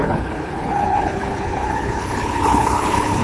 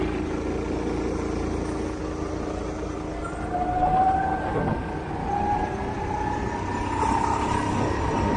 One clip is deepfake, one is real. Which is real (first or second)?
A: second